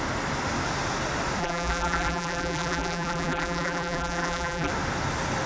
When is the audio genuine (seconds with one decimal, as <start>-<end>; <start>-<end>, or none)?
0.0-1.4; 4.7-5.5